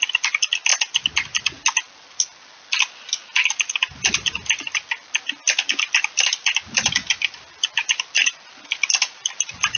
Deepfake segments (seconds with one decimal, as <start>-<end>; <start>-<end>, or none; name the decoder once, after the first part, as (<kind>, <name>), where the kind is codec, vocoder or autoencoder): none